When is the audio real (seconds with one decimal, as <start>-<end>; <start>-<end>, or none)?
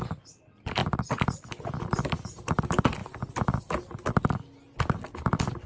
0.0-5.7